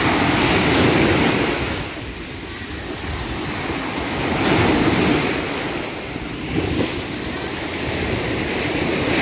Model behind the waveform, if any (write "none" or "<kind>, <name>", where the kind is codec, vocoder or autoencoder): none